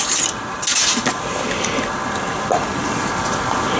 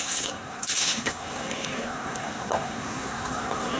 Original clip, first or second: first